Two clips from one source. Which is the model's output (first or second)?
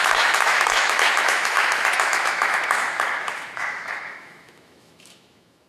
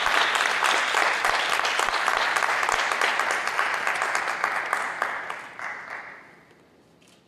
first